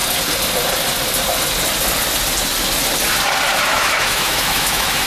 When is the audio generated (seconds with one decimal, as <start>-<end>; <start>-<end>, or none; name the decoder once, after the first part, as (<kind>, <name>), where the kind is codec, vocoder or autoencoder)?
3.7-5.1 (autoencoder, DAC-VAE)